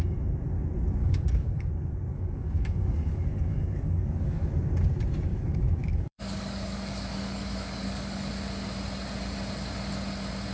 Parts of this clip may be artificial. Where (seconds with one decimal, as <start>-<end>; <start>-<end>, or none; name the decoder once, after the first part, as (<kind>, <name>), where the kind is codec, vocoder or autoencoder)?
1.0-1.7 (codec, DAC); 2.1-4.5; 5.3-8.3